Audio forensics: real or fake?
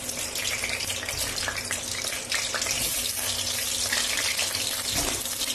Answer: real